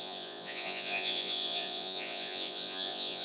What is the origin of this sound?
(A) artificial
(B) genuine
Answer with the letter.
A